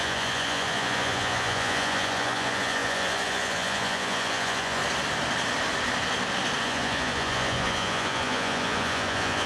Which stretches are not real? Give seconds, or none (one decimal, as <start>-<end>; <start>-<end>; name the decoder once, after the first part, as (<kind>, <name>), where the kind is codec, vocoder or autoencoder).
0.0-4.8 (vocoder, Vocos); 6.6-9.5